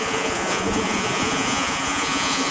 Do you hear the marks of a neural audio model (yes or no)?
yes